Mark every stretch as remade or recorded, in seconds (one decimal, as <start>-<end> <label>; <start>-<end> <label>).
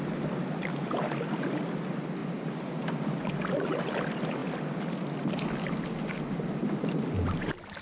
0.0-7.8 recorded